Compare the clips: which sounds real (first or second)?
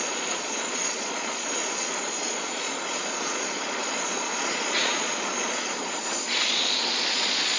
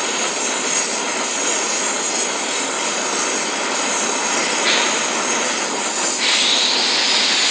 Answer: second